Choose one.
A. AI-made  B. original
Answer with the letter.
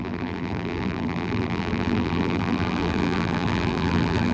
A